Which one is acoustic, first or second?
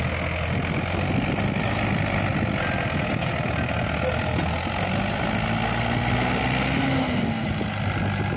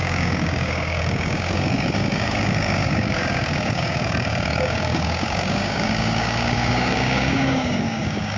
first